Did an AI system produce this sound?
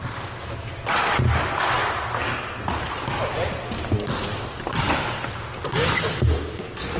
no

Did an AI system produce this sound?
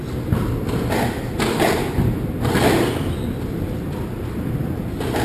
no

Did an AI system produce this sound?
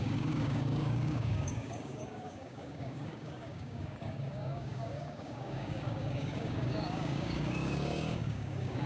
yes